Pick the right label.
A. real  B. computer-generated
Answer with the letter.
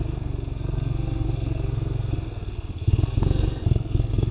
B